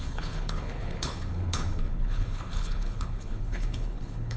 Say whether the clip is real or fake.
fake